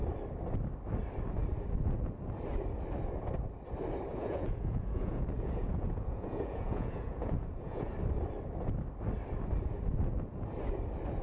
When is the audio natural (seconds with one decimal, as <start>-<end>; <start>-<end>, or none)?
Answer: 0.0-4.1; 7.9-11.2